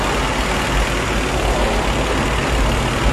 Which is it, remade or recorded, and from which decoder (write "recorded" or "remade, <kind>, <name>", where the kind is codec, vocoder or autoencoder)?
recorded